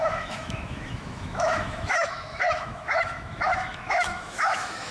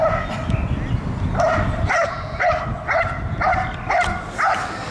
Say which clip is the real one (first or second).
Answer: second